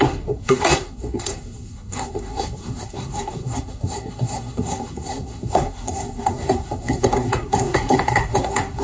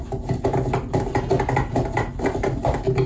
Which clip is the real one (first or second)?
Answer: second